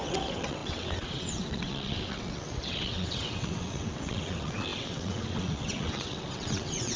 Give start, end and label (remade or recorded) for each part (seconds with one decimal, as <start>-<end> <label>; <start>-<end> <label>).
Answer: 0.0-7.0 remade